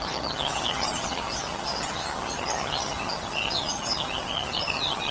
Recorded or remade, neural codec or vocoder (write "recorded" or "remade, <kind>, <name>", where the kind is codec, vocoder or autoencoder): remade, vocoder, HiFi-GAN